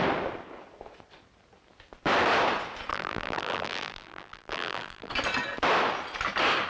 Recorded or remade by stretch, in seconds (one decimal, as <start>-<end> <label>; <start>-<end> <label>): 0.0-2.9 recorded; 2.9-5.1 remade; 5.1-6.7 recorded

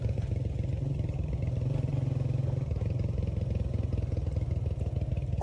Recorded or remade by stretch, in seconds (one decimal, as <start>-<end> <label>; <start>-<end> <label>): 0.0-5.4 recorded

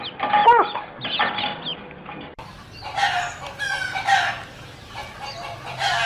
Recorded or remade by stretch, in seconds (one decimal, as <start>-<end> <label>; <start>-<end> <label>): 0.0-1.7 recorded; 1.7-5.4 remade; 5.4-6.1 recorded

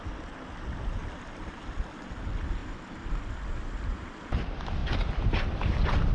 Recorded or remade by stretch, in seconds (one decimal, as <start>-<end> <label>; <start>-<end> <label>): 0.0-2.6 recorded; 2.6-3.1 remade; 3.1-6.1 recorded

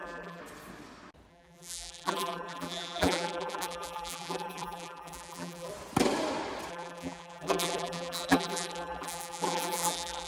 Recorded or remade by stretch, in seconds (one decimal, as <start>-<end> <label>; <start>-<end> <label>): 0.0-0.4 remade; 0.4-1.3 recorded; 1.3-5.7 remade; 5.7-6.7 recorded; 6.7-10.3 remade

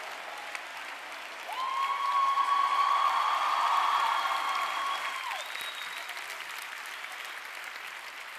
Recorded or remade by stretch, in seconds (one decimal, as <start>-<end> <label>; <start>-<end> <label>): 0.0-0.7 recorded; 0.7-1.4 remade; 1.4-8.4 recorded

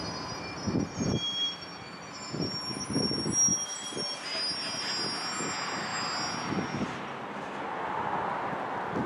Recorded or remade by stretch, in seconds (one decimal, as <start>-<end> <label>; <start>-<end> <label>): 0.0-9.1 recorded